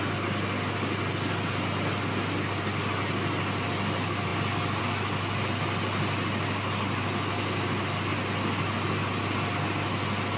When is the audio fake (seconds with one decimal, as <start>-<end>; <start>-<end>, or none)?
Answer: none